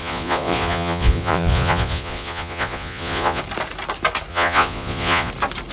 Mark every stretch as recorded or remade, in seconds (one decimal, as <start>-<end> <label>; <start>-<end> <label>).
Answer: 0.0-3.4 remade; 3.4-4.3 recorded; 4.3-5.3 remade; 5.3-5.7 recorded